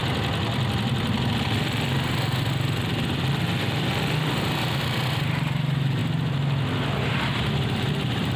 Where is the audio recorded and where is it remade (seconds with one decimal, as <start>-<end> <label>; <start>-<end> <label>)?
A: 0.0-4.6 recorded; 4.6-6.0 remade; 6.0-7.6 recorded; 7.6-8.4 remade